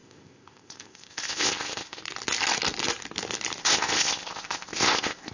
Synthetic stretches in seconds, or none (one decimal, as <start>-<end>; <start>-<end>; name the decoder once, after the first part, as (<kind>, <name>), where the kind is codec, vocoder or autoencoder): 0.0-2.0 (codec, ZipCodec); 3.6-5.3